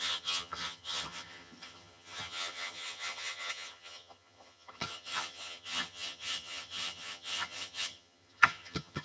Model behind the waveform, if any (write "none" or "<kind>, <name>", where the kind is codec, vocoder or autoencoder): vocoder, HiFi-GAN